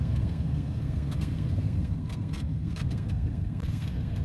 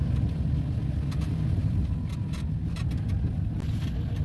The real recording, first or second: second